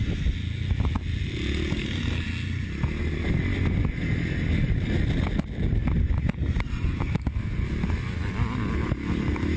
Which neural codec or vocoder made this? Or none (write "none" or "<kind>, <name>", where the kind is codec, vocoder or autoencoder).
none